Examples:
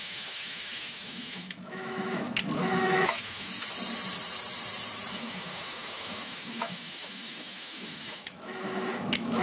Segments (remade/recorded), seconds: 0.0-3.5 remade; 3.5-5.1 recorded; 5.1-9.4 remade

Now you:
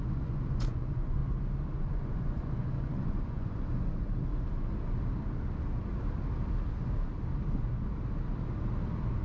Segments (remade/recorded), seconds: 0.0-1.2 remade; 1.2-1.8 recorded; 1.8-3.7 remade; 3.7-9.2 recorded

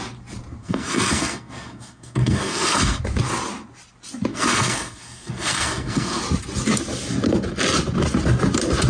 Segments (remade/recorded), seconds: 0.0-0.6 recorded; 0.6-3.0 remade; 3.0-4.3 recorded; 4.3-6.2 remade; 6.2-8.9 recorded

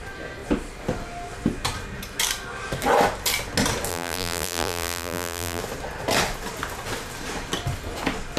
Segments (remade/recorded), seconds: 0.0-3.9 recorded; 3.9-5.6 remade; 5.6-8.4 recorded

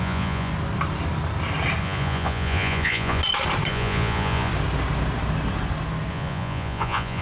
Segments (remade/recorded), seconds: 0.0-0.5 remade; 0.5-1.8 recorded; 1.8-3.2 remade; 3.2-3.7 recorded; 3.7-4.5 remade; 4.5-6.1 recorded; 6.1-7.2 remade

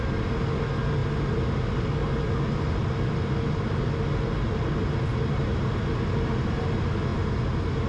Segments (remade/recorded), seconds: 0.0-7.9 recorded